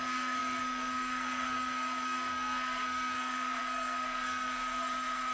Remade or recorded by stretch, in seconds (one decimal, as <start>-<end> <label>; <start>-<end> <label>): 0.0-5.3 remade